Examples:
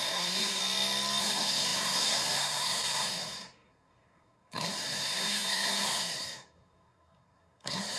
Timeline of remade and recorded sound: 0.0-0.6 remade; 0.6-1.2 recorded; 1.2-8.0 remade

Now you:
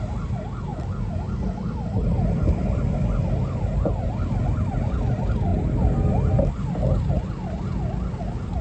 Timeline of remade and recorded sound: 0.0-8.6 recorded

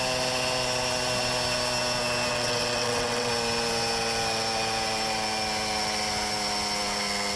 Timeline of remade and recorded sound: 0.0-2.3 recorded; 2.3-3.3 remade; 3.3-7.4 recorded

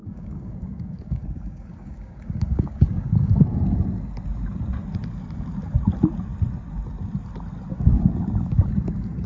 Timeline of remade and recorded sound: 0.0-3.3 remade; 3.3-7.7 recorded; 7.7-8.7 remade; 8.7-9.3 recorded